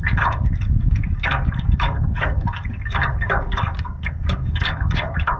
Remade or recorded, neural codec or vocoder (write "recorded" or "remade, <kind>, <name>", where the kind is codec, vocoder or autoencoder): remade, codec, DAC